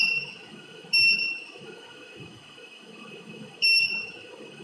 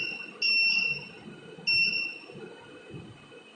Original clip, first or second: second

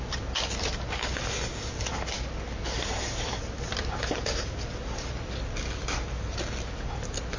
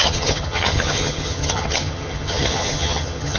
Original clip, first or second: first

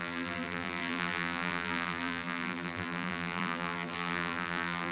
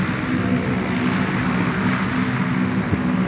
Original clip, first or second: second